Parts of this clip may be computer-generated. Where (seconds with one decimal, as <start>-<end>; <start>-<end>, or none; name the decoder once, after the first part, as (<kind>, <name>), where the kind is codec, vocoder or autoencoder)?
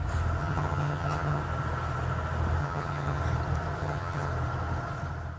0.4-1.4 (vocoder, HiFi-GAN); 2.6-3.2; 3.8-4.3